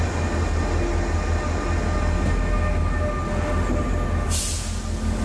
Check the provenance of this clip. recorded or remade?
recorded